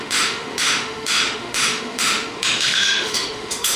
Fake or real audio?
fake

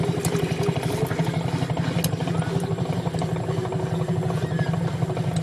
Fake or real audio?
real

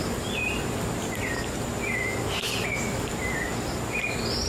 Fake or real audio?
real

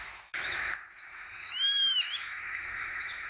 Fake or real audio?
fake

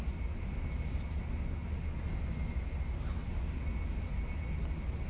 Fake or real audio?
real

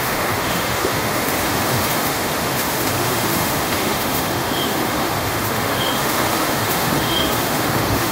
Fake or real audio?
fake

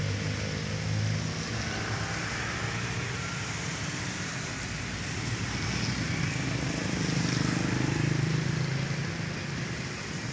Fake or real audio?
real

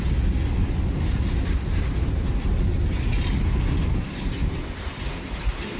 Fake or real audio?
real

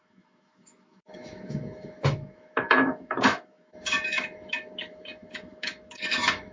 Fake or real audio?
fake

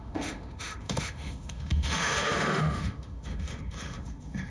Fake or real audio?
fake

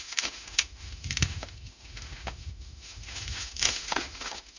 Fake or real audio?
fake